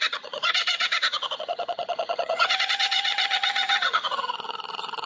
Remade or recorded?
remade